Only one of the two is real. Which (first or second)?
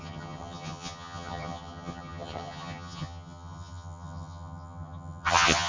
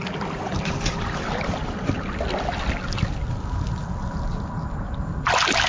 second